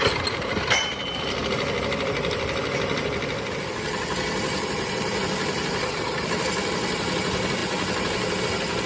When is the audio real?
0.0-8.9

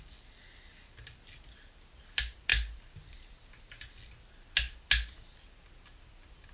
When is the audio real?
0.0-6.5

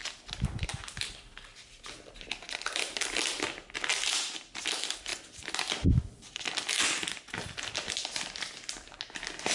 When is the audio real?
0.0-9.5